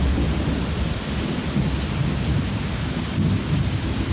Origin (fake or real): real